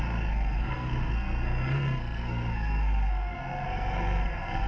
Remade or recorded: remade